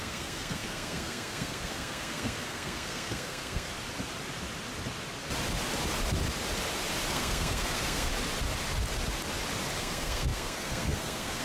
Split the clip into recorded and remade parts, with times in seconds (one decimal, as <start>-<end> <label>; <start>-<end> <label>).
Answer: 0.0-3.7 remade; 3.7-7.1 recorded; 7.1-8.1 remade; 8.1-9.8 recorded; 9.8-11.4 remade